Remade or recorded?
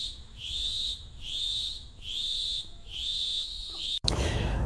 remade